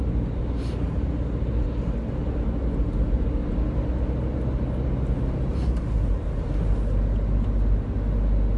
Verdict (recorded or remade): recorded